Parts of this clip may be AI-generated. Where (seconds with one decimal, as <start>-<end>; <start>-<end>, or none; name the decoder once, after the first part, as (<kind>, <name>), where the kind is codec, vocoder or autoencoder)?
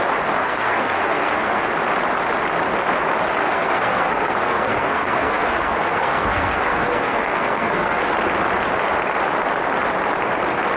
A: 0.4-1.7 (codec, SNAC); 3.4-8.0